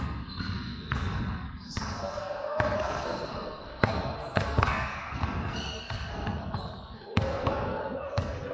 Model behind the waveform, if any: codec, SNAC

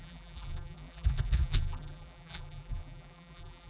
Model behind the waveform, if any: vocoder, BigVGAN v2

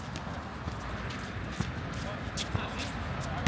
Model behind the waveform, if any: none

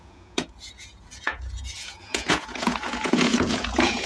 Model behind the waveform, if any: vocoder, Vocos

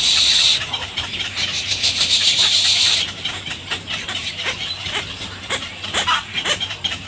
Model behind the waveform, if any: vocoder, BigVGAN v2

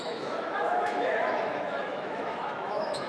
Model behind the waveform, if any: autoencoder, DAC-VAE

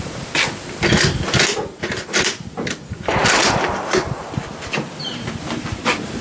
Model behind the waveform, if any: none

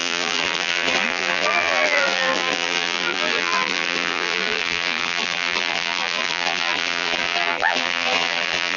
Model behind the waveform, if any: vocoder, BigVGAN v2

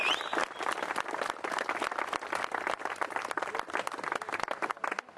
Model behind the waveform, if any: none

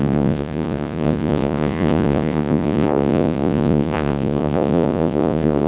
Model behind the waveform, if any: vocoder, Vocos